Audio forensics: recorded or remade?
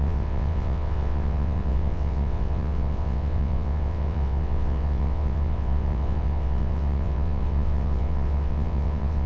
remade